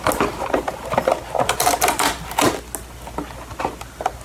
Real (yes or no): yes